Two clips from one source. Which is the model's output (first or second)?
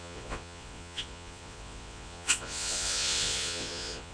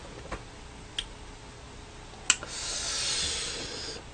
first